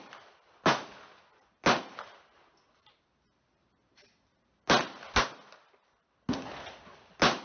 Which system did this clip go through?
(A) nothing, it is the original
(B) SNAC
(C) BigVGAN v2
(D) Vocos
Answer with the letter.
A